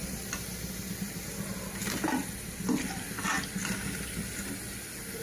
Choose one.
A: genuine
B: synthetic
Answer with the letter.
A